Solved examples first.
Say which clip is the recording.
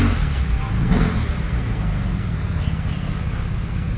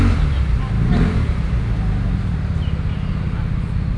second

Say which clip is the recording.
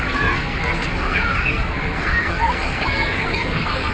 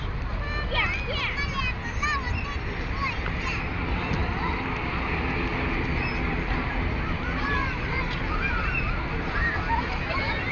second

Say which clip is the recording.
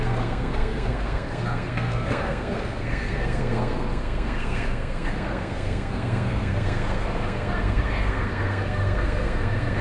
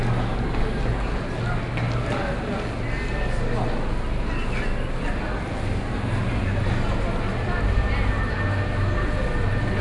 second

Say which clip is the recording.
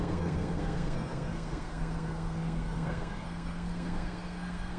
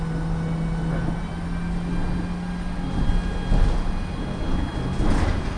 second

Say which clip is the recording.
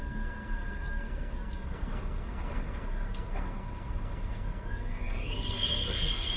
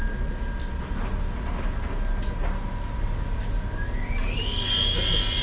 second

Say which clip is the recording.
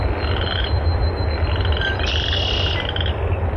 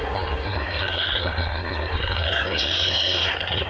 first